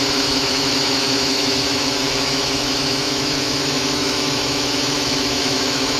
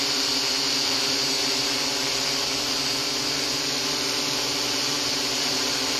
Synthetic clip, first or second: first